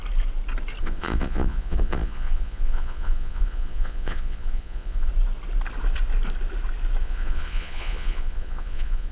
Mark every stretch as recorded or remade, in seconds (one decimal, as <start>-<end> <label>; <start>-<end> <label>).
0.0-0.8 recorded; 0.8-5.1 remade; 5.1-7.0 recorded; 7.0-9.1 remade